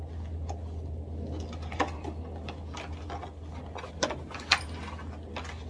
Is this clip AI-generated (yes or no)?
no